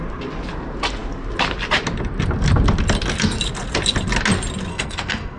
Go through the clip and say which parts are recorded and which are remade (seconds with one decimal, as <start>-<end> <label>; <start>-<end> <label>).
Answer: 0.0-4.7 recorded; 4.7-5.4 remade